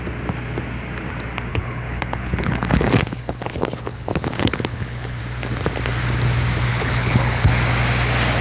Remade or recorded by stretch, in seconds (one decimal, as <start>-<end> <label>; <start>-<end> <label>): 0.0-1.5 recorded; 1.5-5.2 remade; 5.2-6.7 recorded; 6.7-7.5 remade; 7.5-8.4 recorded